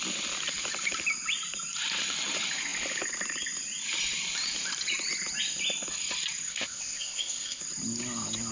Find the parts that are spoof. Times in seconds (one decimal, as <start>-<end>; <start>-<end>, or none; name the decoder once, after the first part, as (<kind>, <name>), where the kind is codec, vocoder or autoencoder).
6.5-7.6 (codec, ZipCodec)